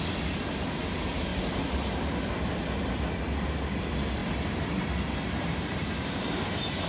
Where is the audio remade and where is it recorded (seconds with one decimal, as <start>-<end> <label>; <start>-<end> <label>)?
0.0-6.9 recorded